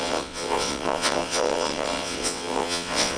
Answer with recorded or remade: remade